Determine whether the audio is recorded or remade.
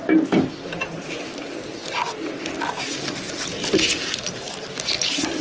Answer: recorded